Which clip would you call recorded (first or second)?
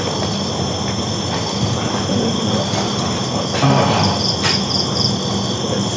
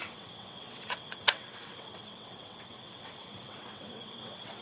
first